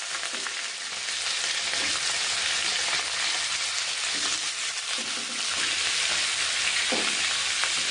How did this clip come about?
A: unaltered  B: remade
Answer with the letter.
A